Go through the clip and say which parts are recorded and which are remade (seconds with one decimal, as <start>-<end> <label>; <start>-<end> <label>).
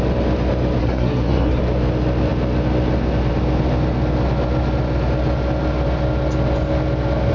0.0-0.8 recorded; 0.8-1.6 remade; 1.6-7.3 recorded